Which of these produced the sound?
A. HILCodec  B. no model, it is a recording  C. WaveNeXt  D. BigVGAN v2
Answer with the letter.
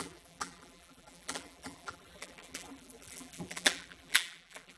D